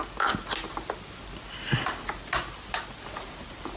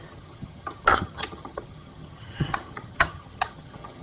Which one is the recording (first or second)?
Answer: first